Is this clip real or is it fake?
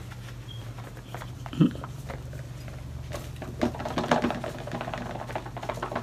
real